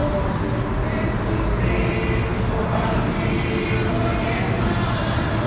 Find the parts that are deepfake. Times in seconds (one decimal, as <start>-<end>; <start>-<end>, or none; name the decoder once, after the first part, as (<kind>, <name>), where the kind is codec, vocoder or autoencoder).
0.0-1.3 (vocoder, BigVGAN v2)